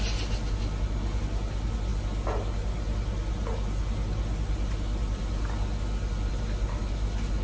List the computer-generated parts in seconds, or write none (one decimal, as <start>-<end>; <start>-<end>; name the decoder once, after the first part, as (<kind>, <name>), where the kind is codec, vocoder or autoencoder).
none